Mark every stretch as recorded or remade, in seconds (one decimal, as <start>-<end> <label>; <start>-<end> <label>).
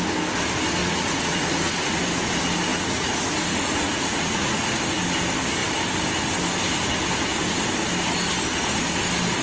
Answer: 0.0-0.8 recorded; 0.8-2.0 remade; 2.0-2.7 recorded; 2.7-4.8 remade; 4.8-9.4 recorded